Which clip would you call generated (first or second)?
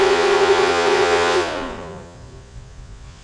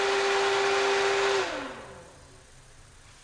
first